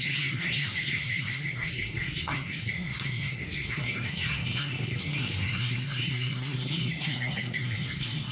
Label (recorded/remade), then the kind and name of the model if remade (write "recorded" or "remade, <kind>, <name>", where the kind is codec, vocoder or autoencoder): remade, codec, SNAC